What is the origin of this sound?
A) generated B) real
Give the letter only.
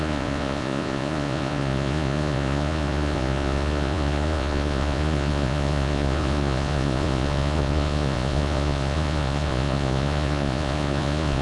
A